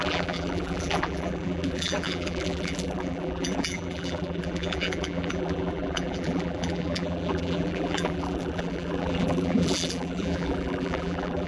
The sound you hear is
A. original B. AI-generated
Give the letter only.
B